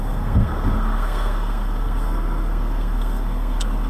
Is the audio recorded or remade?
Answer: remade